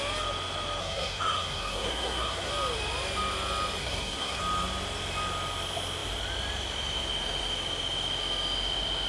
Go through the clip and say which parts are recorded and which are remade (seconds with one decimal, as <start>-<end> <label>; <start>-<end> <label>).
0.0-0.8 recorded; 0.8-2.5 remade; 2.5-3.8 recorded; 3.8-4.4 remade; 4.4-9.1 recorded